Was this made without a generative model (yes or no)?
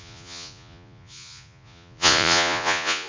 no